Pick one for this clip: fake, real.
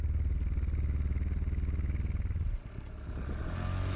real